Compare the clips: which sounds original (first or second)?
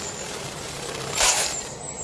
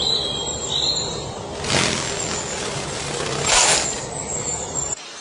second